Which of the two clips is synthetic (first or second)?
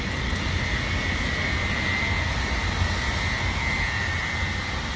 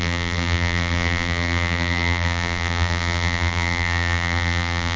second